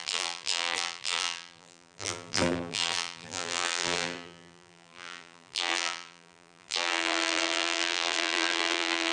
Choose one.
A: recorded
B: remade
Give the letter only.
B